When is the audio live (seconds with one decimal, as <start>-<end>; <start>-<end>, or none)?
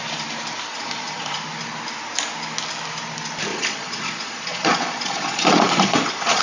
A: 0.0-0.7; 1.4-3.5